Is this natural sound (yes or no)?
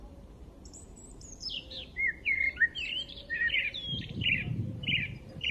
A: no